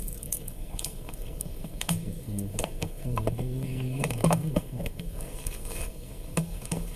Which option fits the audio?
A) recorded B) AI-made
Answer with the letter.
B